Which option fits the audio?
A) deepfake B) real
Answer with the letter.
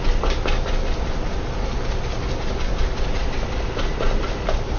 B